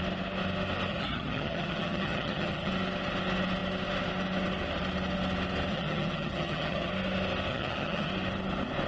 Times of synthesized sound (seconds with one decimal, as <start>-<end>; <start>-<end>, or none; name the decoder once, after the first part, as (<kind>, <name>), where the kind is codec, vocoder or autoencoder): 0.9-2.7 (vocoder, HiFi-GAN); 5.7-6.9; 7.5-8.1